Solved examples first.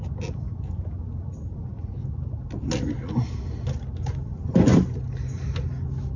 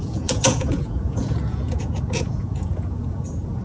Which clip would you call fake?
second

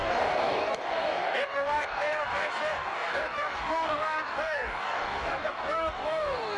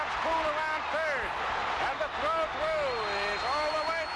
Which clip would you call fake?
first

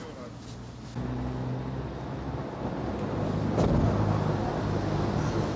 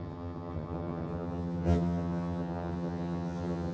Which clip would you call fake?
second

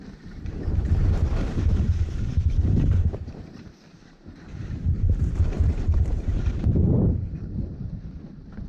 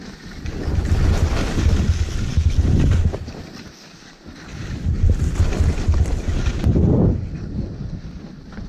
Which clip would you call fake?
first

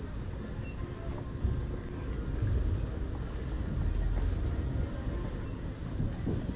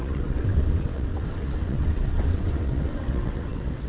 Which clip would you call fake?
second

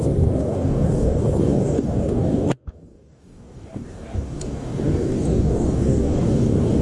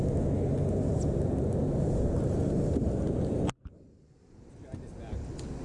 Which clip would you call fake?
first